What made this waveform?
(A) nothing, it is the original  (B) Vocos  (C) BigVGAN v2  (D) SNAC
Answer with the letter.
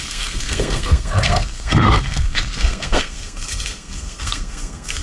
D